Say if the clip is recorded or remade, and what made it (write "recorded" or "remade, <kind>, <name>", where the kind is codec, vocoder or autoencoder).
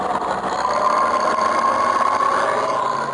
recorded